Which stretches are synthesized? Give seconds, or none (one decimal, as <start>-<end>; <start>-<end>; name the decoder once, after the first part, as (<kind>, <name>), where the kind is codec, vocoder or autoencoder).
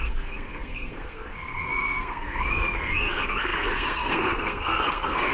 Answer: 0.0-5.3 (codec, SNAC)